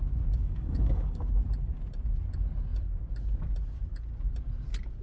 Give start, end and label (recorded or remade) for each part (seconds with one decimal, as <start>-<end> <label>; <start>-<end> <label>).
0.0-0.4 recorded; 0.4-1.3 remade; 1.3-5.0 recorded